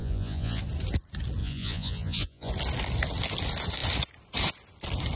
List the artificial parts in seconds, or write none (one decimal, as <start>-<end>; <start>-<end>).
0.0-0.6; 1.4-2.5